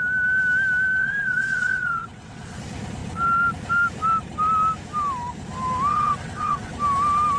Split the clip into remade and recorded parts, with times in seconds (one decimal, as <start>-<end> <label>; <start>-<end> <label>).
0.0-1.0 recorded; 1.0-2.6 remade; 2.6-5.9 recorded; 5.9-6.7 remade; 6.7-7.4 recorded